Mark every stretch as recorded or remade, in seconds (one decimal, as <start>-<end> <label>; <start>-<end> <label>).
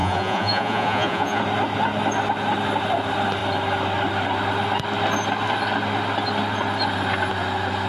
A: 0.0-1.4 remade; 1.4-7.9 recorded